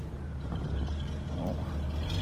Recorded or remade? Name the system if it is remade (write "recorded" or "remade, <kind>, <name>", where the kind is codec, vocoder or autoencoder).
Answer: recorded